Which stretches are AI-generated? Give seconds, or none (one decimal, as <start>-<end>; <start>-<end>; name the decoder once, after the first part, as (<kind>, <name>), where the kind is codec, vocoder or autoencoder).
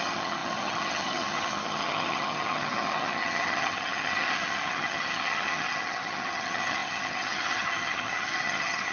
0.0-8.9 (vocoder, HiFi-GAN)